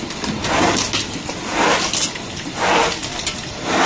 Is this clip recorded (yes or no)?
yes